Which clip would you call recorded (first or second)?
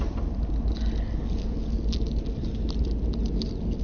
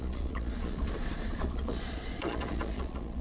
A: first